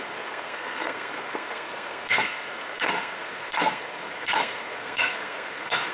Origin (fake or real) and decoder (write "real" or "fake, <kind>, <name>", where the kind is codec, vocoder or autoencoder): fake, codec, SNAC